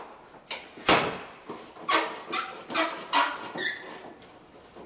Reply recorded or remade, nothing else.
recorded